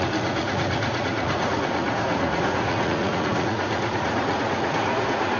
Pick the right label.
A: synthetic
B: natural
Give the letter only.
A